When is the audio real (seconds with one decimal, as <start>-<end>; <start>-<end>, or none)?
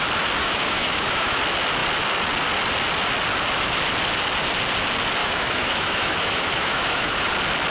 0.0-0.4; 1.4-5.2; 7.3-7.7